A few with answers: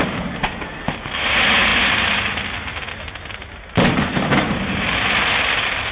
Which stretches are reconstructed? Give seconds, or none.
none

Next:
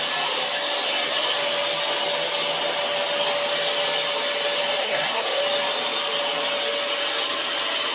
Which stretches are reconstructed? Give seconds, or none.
4.8-5.4 (codec, SNAC)

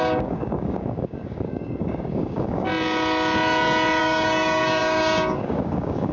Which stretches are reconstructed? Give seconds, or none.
0.0-2.7 (codec, DAC); 4.0-6.1

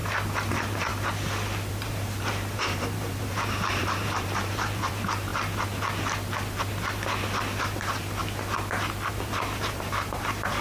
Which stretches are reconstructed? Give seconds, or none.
0.5-0.9 (vocoder, BigVGAN v2); 1.7-5.3; 7.6-8.2; 9.1-10.6

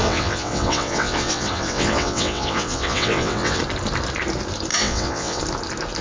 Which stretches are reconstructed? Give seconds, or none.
0.0-3.6 (vocoder, WaveNeXt); 4.7-5.4

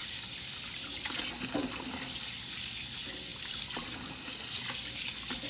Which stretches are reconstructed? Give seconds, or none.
0.0-1.0 (vocoder, BigVGAN v2); 3.3-4.3

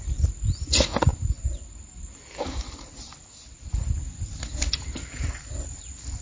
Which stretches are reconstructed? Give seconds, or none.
none

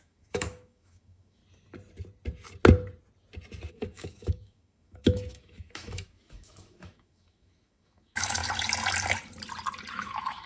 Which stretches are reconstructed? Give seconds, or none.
0.0-1.4 (autoencoder, DAC-VAE); 3.7-8.4; 9.9-10.5